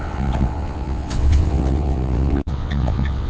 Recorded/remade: remade